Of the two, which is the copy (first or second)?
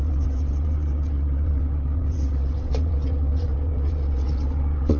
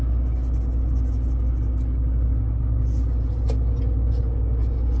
first